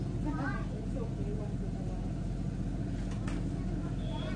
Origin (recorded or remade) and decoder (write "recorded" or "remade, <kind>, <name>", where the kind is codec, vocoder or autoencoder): recorded